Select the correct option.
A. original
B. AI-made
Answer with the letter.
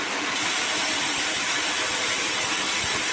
A